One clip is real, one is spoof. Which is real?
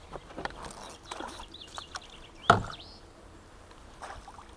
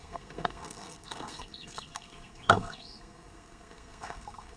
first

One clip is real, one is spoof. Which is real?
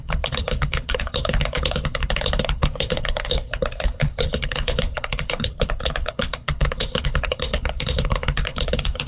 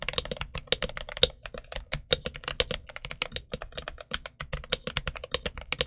second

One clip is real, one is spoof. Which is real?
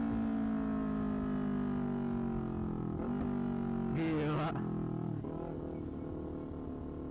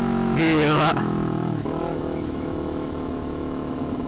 first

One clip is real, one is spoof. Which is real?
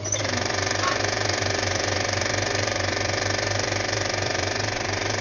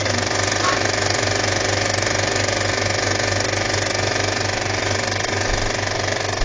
second